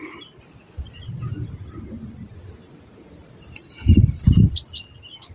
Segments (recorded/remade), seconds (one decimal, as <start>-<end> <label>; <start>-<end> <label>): 0.0-4.0 recorded; 4.0-5.3 remade